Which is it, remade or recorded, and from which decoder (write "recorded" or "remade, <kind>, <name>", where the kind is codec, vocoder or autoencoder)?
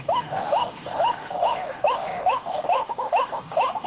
remade, autoencoder, DAC-VAE